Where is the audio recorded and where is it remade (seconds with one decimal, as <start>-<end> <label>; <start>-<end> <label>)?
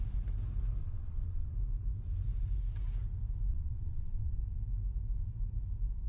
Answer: 0.0-0.8 recorded; 0.8-1.5 remade; 1.5-3.5 recorded; 3.5-4.4 remade; 4.4-6.1 recorded